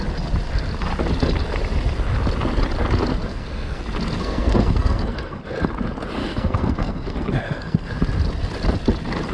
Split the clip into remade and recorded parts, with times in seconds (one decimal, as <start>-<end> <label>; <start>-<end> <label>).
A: 0.0-3.3 recorded; 3.3-3.8 remade; 3.8-4.2 recorded; 4.2-5.4 remade; 5.4-6.2 recorded; 6.2-8.0 remade; 8.0-9.3 recorded